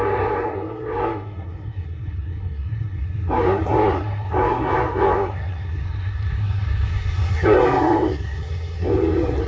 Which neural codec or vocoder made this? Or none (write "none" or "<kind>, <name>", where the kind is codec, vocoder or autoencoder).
codec, SNAC